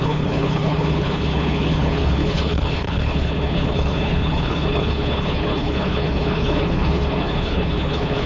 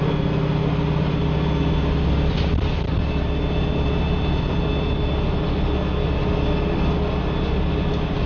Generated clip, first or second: first